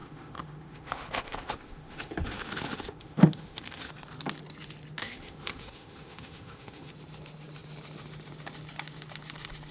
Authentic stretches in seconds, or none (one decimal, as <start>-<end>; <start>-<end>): 3.9-5.0; 6.9-9.7